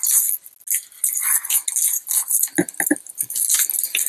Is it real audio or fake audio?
real